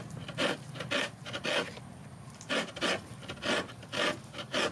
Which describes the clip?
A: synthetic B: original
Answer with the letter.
B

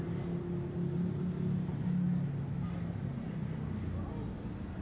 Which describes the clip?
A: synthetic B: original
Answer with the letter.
B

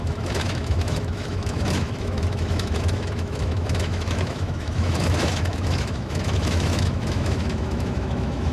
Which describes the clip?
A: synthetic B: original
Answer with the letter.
A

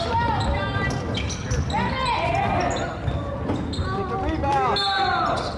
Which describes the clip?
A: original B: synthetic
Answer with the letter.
A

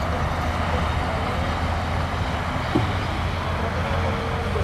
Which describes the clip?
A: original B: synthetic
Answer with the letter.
A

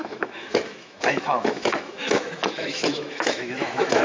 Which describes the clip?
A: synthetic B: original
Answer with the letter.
A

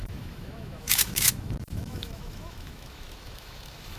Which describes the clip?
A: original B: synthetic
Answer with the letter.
B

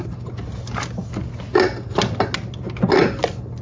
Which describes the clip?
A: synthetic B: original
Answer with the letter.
B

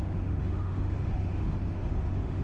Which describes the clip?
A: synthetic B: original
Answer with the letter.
A